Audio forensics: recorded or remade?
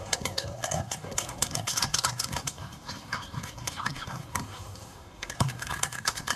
remade